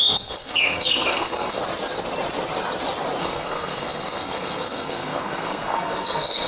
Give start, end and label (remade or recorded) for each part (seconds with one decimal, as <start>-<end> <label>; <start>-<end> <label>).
0.0-1.6 remade; 1.6-3.2 recorded; 3.2-6.5 remade